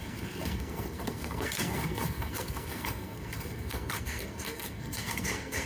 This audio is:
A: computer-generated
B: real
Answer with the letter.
A